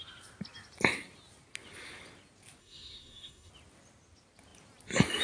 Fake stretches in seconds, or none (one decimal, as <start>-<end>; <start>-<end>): 2.6-3.5